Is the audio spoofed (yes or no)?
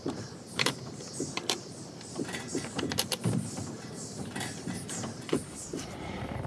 yes